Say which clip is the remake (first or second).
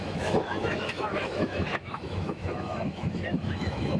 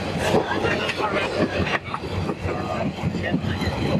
first